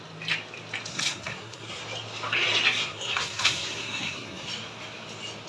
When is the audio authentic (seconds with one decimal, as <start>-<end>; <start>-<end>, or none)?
0.0-0.9; 1.8-2.8; 4.5-5.5